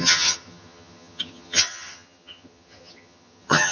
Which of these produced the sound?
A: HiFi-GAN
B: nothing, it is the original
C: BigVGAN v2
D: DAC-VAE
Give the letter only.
A